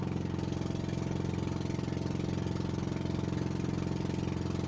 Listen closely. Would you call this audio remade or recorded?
recorded